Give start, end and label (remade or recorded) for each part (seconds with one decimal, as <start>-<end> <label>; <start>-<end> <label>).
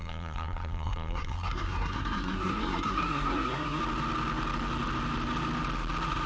0.0-3.8 remade; 3.8-6.3 recorded